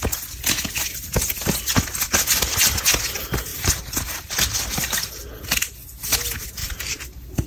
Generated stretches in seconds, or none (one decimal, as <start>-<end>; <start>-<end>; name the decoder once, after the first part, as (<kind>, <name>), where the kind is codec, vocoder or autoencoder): 3.5-5.0 (vocoder, BigVGAN v2); 6.6-7.5